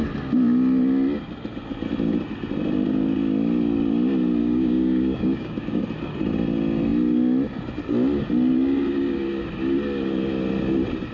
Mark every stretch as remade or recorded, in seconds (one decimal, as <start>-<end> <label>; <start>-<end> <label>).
0.0-4.4 recorded; 4.4-5.8 remade; 5.8-11.1 recorded